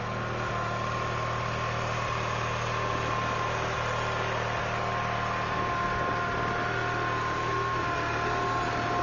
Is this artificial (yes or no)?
no